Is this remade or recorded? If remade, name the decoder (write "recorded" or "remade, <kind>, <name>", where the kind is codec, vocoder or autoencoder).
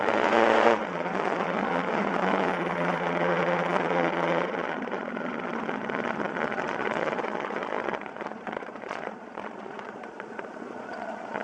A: remade, vocoder, Vocos